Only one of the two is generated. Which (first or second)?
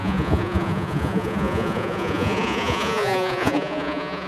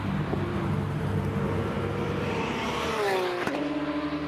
first